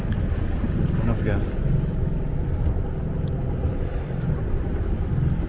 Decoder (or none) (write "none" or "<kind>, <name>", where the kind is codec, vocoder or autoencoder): vocoder, BigVGAN v2